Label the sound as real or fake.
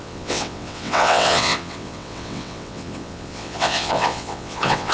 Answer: fake